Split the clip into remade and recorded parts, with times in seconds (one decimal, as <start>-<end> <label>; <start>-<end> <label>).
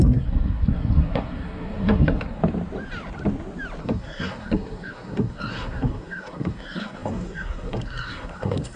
0.0-2.4 remade; 2.4-3.8 recorded; 3.8-8.8 remade